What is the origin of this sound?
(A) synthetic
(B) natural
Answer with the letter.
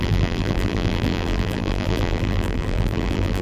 A